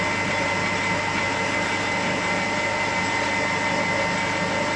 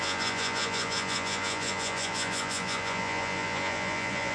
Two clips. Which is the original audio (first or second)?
first